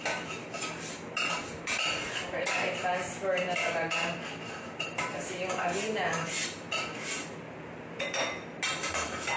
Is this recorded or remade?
recorded